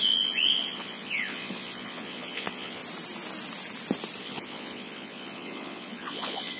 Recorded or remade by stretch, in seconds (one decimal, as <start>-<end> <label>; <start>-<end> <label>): 0.0-2.8 remade; 2.8-4.2 recorded; 4.2-6.6 remade